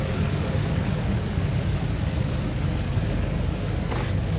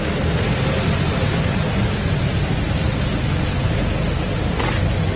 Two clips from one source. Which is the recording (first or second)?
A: second